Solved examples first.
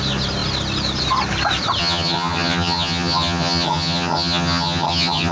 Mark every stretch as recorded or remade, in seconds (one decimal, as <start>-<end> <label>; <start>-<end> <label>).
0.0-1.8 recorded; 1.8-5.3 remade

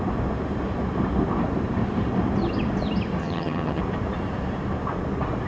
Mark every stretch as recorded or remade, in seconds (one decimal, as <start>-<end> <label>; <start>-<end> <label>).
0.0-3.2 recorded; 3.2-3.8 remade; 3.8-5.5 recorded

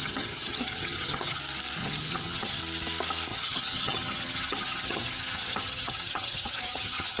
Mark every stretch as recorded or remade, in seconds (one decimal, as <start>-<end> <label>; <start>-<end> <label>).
0.0-1.4 remade; 1.4-1.8 recorded; 1.8-2.6 remade; 2.6-3.3 recorded; 3.3-7.2 remade

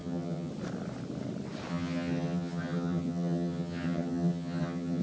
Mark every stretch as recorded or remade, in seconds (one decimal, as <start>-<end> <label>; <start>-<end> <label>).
0.0-0.5 remade; 0.5-1.7 recorded; 1.7-5.0 remade